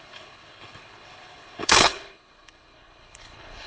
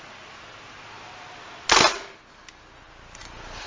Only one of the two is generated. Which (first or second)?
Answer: first